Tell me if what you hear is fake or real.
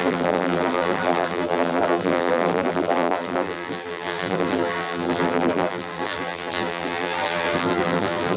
fake